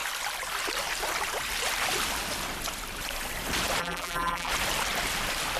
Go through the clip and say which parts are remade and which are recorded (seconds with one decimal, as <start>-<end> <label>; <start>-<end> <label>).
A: 0.0-3.8 recorded; 3.8-4.5 remade; 4.5-5.6 recorded